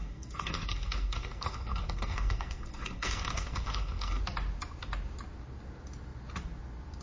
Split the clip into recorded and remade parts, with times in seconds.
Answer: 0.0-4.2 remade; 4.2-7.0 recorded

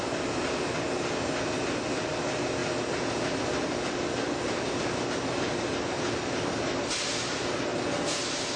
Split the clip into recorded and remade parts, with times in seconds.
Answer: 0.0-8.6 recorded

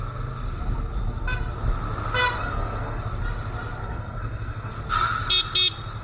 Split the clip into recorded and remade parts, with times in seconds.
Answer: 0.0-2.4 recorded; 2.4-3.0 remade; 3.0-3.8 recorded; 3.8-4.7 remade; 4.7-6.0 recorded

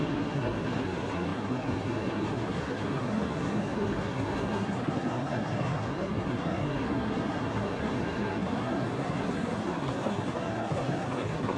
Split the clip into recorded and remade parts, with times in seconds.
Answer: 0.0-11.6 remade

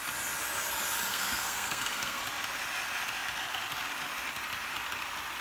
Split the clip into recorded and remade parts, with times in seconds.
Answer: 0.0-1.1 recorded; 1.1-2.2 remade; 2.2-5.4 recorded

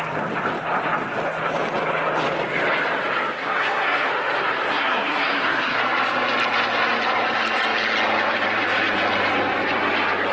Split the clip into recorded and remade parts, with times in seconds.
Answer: 0.0-3.4 recorded; 3.4-4.1 remade; 4.1-4.7 recorded; 4.7-5.8 remade; 5.8-10.3 recorded